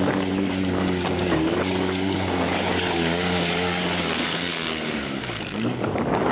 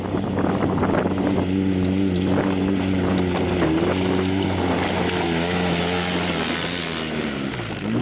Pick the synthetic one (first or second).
first